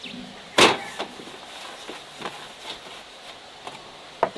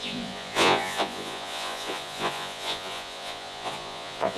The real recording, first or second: first